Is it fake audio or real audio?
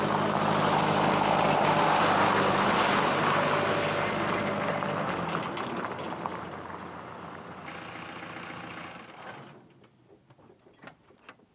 real